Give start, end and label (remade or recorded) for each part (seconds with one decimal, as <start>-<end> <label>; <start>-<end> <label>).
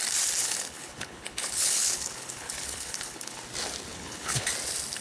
0.0-0.4 recorded; 0.4-3.4 remade; 3.4-3.9 recorded; 3.9-4.5 remade; 4.5-5.0 recorded